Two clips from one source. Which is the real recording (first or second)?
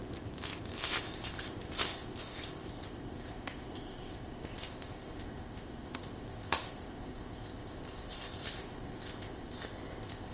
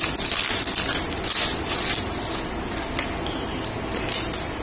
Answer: second